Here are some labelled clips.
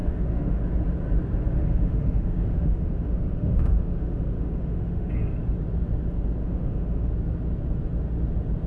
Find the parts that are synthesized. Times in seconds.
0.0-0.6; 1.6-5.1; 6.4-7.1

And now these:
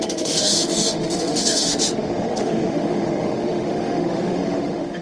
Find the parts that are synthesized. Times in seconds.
0.0-5.0

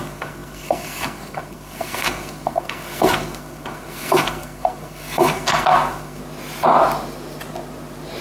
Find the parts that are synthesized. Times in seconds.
0.0-6.2